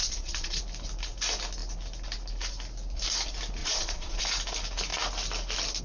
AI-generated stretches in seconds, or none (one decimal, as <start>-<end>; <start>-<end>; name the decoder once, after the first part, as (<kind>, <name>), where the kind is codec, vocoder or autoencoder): 0.0-0.6 (vocoder, Vocos); 3.6-4.2